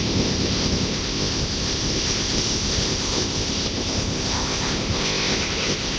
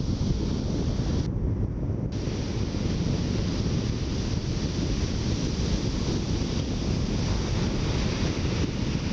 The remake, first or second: first